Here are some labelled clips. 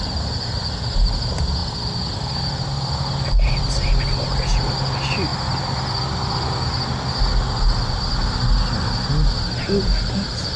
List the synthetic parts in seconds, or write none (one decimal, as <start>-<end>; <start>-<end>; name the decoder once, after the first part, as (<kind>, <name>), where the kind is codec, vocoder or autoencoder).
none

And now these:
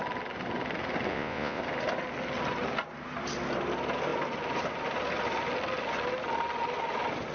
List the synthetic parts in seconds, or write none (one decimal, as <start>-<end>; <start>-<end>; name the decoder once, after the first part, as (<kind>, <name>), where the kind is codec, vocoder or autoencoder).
1.1-1.6 (vocoder, Vocos)

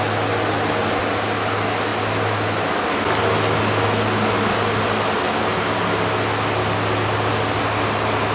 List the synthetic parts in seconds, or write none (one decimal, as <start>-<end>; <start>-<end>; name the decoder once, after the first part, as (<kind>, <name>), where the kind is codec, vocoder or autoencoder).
none